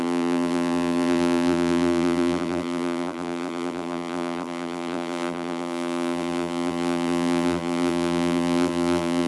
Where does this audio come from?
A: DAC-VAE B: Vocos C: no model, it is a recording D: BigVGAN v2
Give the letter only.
D